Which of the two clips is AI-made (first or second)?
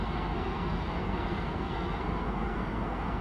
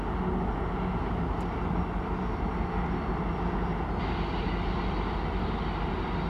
first